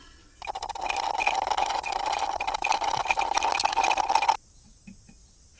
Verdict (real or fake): real